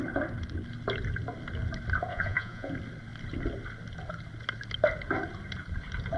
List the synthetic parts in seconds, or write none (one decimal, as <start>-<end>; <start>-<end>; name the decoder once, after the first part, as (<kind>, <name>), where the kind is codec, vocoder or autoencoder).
2.1-2.7 (vocoder, Vocos)